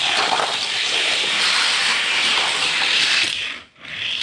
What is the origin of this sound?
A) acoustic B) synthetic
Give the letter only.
A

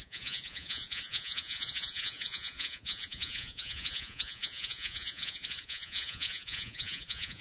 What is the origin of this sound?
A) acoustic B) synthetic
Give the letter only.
B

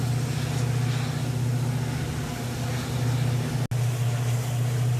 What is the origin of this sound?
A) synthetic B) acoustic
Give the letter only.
B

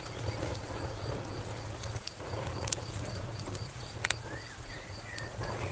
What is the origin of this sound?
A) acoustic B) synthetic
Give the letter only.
B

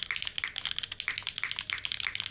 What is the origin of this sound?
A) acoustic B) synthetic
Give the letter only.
A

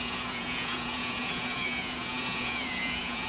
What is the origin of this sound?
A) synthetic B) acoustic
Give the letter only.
A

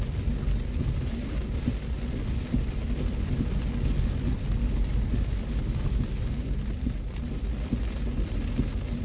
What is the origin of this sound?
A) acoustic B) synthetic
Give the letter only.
A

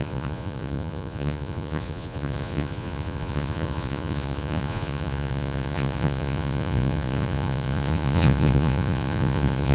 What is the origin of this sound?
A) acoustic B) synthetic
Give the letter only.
B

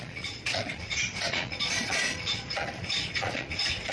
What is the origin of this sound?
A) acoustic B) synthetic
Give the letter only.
B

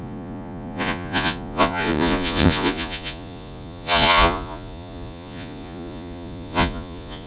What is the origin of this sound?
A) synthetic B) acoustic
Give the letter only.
A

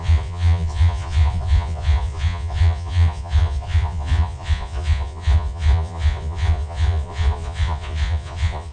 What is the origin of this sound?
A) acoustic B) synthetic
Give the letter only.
B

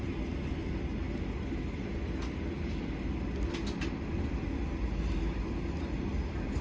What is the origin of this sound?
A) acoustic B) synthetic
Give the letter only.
A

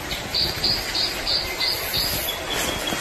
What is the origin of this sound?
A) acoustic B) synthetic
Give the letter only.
A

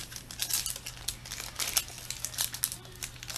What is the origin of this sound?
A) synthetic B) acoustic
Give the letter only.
B